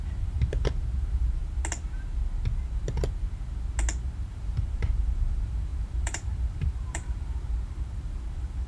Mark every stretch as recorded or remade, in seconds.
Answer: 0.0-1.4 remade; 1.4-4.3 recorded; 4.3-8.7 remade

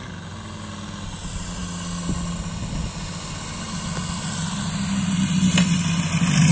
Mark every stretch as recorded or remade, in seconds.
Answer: 0.0-6.5 recorded

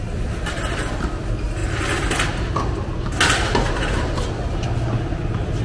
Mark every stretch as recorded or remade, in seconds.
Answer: 0.0-5.6 recorded

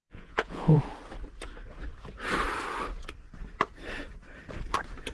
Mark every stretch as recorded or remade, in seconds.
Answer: 0.0-0.8 remade; 0.8-5.1 recorded

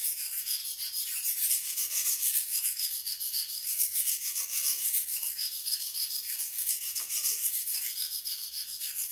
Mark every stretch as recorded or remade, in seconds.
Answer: 0.0-0.6 remade; 0.6-1.5 recorded; 1.5-9.1 remade

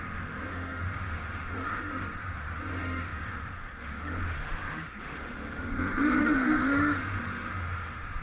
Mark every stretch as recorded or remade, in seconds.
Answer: 0.0-8.2 remade